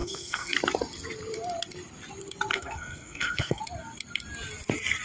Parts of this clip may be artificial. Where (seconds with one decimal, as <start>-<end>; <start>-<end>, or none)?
0.0-0.5; 2.5-3.6

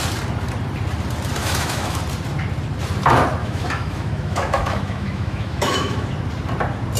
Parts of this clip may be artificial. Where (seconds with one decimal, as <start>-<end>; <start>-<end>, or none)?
1.4-2.0; 3.4-6.1

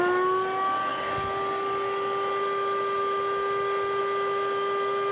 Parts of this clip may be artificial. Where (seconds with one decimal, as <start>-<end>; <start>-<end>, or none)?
none

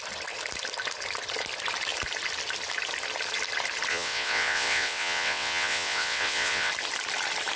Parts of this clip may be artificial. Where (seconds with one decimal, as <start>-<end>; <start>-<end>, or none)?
3.9-6.7

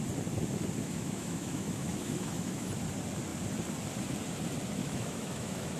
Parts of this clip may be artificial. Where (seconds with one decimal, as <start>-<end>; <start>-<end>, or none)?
0.8-2.7; 4.8-5.8

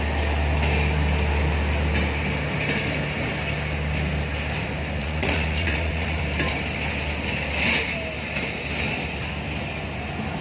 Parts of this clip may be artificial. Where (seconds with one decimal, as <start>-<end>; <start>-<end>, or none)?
5.0-6.2

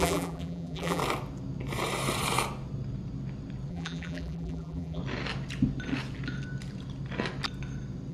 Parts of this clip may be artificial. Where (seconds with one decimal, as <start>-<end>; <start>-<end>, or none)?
0.0-1.0; 3.7-5.0